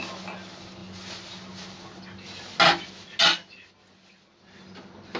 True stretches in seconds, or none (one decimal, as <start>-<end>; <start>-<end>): 0.0-5.2